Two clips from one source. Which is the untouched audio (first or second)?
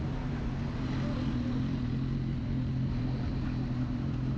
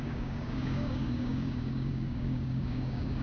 first